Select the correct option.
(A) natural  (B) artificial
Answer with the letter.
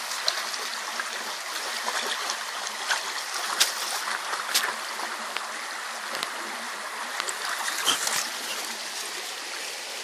A